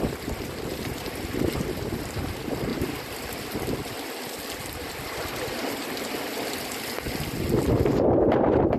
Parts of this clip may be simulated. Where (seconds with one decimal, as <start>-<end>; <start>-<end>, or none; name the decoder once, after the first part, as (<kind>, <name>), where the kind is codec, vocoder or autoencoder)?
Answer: none